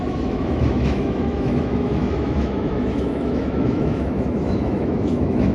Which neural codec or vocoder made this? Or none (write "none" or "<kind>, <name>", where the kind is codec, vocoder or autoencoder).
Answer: autoencoder, DAC-VAE